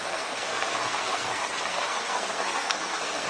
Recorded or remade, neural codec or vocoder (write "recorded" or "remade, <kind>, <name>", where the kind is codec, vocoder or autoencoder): remade, codec, SNAC